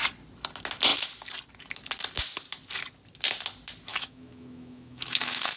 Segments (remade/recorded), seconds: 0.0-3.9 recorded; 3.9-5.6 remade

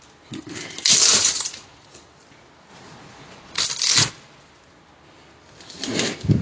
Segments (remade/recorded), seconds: 0.0-1.1 recorded; 1.1-2.0 remade; 2.0-2.7 recorded; 2.7-3.6 remade; 3.6-6.4 recorded

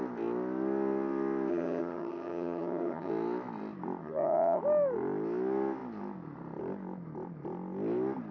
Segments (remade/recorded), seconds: 0.0-1.5 recorded; 1.5-3.1 remade; 3.1-4.0 recorded; 4.0-4.6 remade; 4.6-8.3 recorded